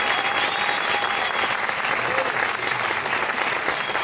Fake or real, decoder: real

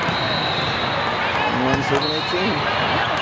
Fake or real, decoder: real